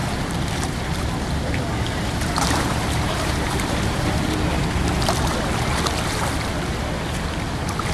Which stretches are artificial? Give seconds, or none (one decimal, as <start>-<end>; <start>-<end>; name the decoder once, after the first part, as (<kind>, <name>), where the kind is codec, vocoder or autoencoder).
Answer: 0.0-4.7 (vocoder, BigVGAN v2)